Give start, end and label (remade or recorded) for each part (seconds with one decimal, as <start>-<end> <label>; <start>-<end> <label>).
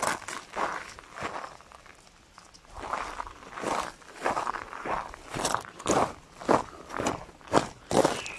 0.0-6.4 recorded; 6.4-7.1 remade; 7.1-8.4 recorded